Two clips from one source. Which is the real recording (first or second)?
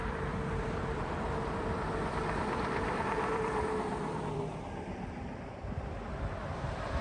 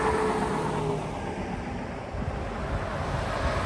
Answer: second